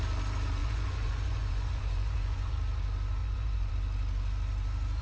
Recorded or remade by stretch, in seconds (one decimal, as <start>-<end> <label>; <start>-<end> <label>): 0.0-0.6 recorded; 0.6-2.5 remade; 2.5-3.2 recorded; 3.2-3.7 remade; 3.7-5.0 recorded